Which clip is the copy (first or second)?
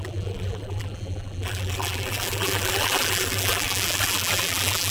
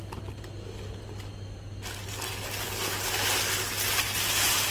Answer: first